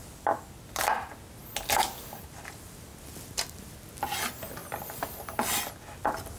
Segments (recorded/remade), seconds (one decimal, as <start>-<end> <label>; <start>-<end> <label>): 0.0-6.4 recorded